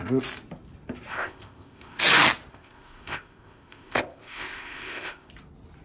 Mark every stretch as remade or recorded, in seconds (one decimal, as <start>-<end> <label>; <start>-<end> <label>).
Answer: 0.0-1.1 recorded; 1.1-2.0 remade; 2.0-2.5 recorded; 2.5-5.3 remade; 5.3-5.8 recorded